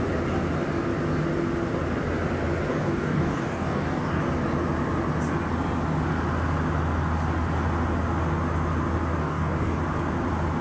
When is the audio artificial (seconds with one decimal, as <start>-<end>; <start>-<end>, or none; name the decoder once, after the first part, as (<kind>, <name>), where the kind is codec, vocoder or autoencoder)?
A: 2.7-4.2 (codec, DAC); 9.2-9.8